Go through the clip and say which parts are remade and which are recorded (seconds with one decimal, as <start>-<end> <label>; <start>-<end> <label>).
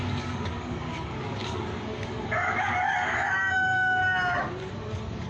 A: 0.0-4.0 remade; 4.0-4.7 recorded; 4.7-5.3 remade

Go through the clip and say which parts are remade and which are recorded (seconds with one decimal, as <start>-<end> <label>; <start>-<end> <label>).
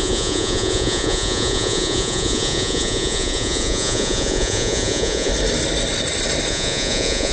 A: 0.0-5.3 remade; 5.3-6.5 recorded; 6.5-7.3 remade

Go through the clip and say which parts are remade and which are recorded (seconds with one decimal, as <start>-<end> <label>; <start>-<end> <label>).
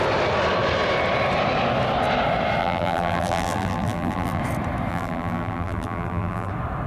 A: 0.0-2.6 recorded; 2.6-4.4 remade; 4.4-4.9 recorded; 4.9-6.5 remade; 6.5-6.9 recorded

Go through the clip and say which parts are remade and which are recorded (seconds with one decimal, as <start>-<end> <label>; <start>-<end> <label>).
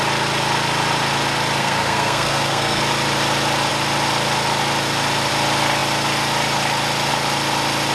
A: 0.0-1.6 recorded; 1.6-2.8 remade; 2.8-7.9 recorded